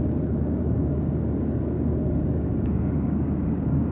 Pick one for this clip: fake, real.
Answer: fake